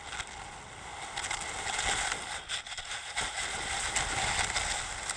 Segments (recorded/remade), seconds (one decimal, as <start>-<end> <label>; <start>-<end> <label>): 0.0-5.2 recorded